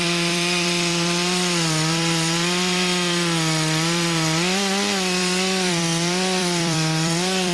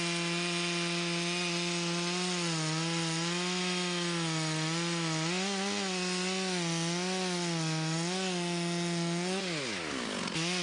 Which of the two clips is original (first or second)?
second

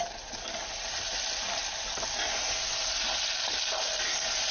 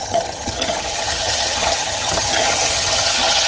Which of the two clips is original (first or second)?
first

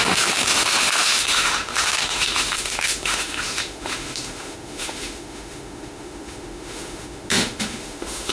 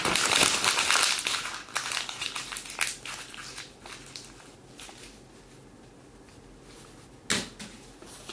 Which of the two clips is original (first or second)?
second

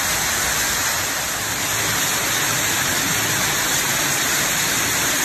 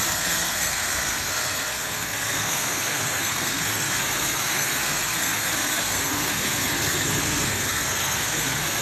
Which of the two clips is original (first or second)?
first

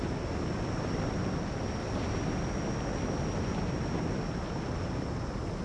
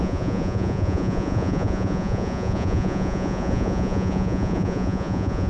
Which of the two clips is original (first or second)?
first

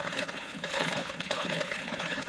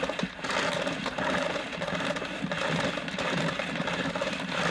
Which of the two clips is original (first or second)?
second